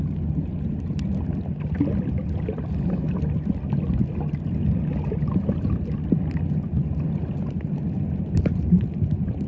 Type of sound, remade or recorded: recorded